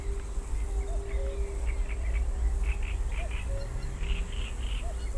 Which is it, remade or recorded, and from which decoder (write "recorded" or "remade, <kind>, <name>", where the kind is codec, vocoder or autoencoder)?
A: recorded